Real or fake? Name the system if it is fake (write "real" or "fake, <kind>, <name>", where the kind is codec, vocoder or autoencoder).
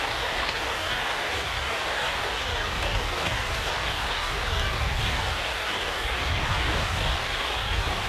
fake, codec, DAC